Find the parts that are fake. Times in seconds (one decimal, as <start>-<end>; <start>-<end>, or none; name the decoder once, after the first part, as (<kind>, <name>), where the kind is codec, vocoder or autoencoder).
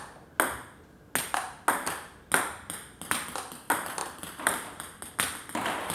4.0-5.1 (vocoder, BigVGAN v2)